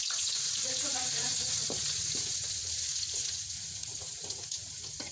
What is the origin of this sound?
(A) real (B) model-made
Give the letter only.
B